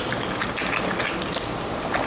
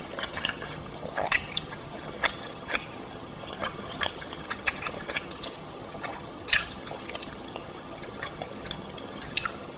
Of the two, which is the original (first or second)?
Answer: first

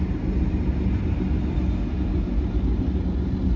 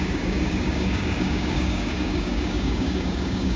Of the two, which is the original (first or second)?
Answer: first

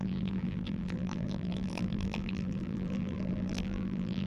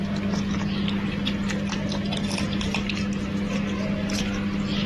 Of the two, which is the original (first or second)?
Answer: second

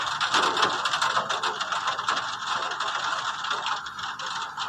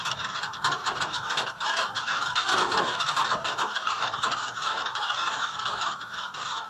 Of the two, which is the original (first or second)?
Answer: first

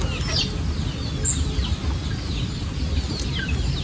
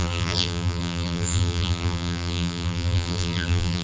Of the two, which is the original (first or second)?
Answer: first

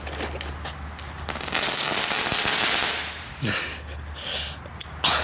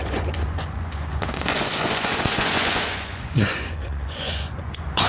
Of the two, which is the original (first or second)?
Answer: first